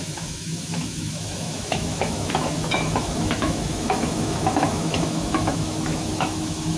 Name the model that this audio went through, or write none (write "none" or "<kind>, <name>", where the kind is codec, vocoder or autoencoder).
autoencoder, DAC-VAE